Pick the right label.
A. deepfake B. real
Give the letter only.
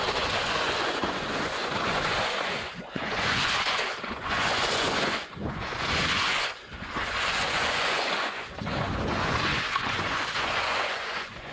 A